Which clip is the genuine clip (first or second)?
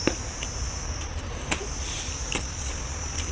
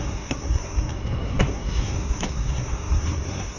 first